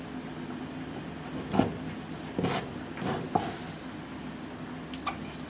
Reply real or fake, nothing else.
real